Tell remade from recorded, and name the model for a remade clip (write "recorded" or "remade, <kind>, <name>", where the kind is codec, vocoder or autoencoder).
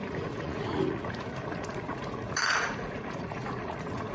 remade, vocoder, Vocos